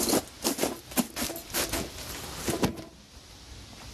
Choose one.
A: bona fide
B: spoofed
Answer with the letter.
A